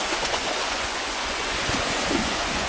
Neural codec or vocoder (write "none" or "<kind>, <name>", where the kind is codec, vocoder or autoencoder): vocoder, Vocos